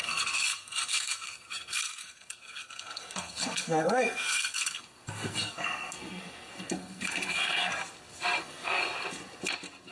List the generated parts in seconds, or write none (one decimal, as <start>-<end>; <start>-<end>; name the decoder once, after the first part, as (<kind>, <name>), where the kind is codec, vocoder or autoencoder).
0.0-7.7 (codec, SNAC); 8.4-8.8